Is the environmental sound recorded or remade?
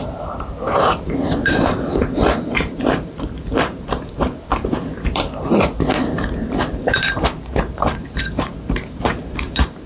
remade